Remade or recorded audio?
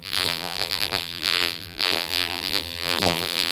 remade